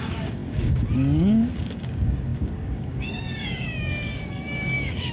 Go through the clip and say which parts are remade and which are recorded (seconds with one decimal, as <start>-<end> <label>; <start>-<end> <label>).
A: 0.0-5.1 remade